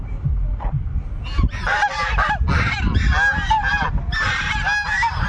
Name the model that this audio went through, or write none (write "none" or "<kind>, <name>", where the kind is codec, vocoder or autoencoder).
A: none